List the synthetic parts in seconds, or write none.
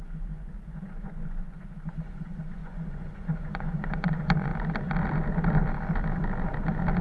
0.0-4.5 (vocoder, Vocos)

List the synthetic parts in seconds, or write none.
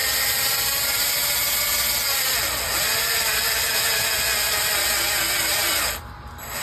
0.0-1.0 (vocoder, BigVGAN v2); 1.7-3.7; 5.5-6.6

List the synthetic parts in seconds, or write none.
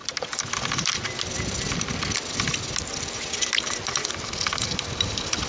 0.0-5.5 (vocoder, BigVGAN v2)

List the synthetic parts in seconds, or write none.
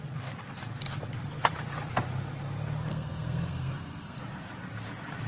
2.9-4.2 (codec, SNAC)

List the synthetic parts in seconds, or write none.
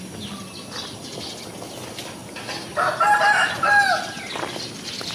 none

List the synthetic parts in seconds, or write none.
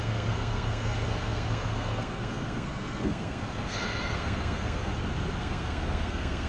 0.0-4.9 (codec, SNAC); 5.4-6.5